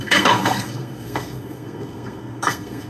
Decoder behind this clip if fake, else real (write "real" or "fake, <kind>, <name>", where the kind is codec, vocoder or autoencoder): fake, codec, SNAC